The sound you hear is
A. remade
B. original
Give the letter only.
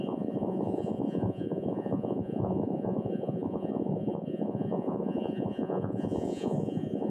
A